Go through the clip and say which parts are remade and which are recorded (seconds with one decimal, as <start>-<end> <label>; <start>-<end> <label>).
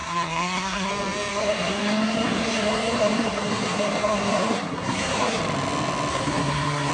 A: 0.0-0.9 remade; 0.9-1.3 recorded; 1.3-5.4 remade; 5.4-6.1 recorded; 6.1-6.9 remade